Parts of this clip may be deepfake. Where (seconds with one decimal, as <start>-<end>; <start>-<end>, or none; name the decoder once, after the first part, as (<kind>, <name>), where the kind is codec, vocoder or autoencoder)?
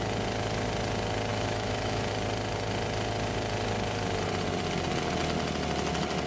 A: 1.3-2.1 (autoencoder, DAC-VAE)